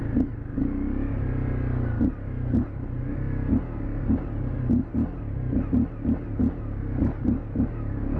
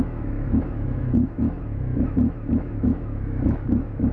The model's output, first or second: second